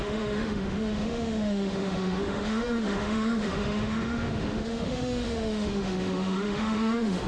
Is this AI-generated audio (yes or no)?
yes